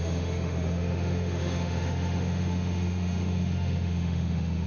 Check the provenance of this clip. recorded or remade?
remade